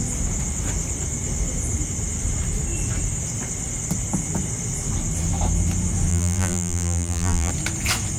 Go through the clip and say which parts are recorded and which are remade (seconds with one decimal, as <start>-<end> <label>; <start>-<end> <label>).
0.0-6.1 recorded; 6.1-7.5 remade; 7.5-8.2 recorded